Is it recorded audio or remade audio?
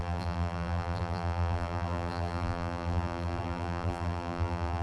remade